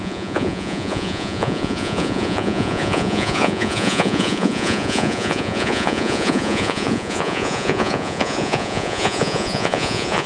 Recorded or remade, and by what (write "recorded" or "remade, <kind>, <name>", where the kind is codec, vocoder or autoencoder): remade, vocoder, Vocos